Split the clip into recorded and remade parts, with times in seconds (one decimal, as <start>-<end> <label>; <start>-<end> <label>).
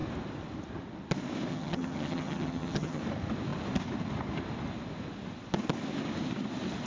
0.0-1.5 recorded; 1.5-3.0 remade; 3.0-6.9 recorded